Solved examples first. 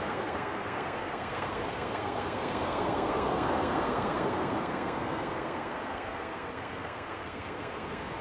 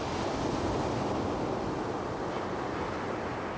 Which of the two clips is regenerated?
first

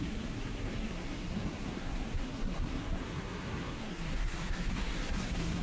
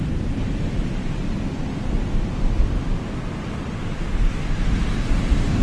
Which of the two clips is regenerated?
first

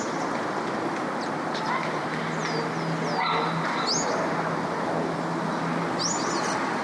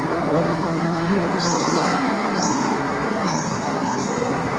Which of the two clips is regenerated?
second